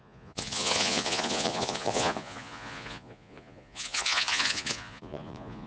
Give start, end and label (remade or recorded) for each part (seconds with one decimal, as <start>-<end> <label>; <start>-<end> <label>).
0.0-5.7 remade